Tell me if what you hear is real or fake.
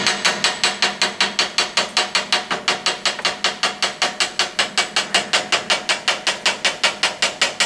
real